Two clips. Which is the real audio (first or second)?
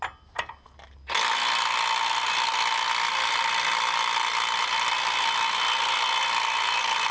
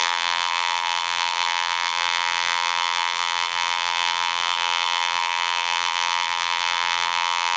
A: first